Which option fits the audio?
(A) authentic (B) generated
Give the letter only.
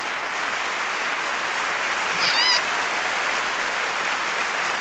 A